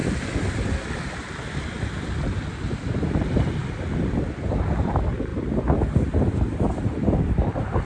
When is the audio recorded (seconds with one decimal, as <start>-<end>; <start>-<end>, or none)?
none